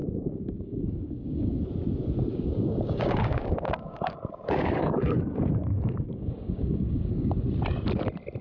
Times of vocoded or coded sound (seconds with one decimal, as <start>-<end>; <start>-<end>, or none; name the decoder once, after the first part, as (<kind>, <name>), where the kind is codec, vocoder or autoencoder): 0.0-1.6 (codec, DAC); 2.3-7.3